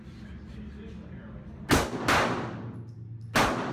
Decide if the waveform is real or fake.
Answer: real